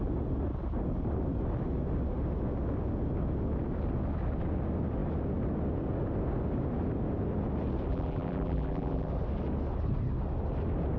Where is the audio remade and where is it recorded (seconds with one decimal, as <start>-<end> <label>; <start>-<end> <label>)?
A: 0.0-7.9 recorded; 7.9-9.1 remade; 9.1-11.0 recorded